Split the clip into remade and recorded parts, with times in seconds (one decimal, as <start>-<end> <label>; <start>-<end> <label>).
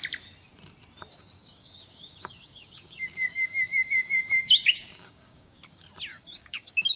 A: 0.0-1.4 recorded; 1.4-5.6 remade; 5.6-6.1 recorded; 6.1-7.0 remade